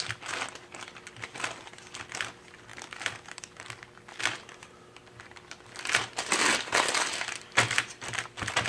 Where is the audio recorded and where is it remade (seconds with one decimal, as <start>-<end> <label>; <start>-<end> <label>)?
0.0-2.7 recorded; 2.7-6.0 remade; 6.0-8.7 recorded